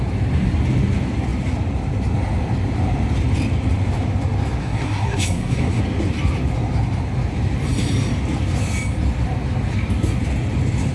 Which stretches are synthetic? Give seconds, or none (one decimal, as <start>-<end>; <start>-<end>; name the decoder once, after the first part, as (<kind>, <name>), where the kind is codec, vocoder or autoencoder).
4.6-5.8 (codec, SNAC)